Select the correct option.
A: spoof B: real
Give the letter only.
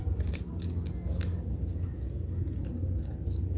B